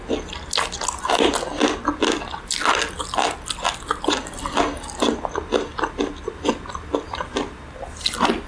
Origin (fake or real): real